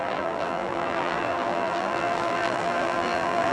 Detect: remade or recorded remade